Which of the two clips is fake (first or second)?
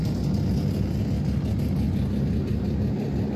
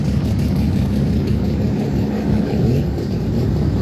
second